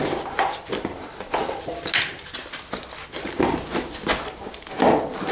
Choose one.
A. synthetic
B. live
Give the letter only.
B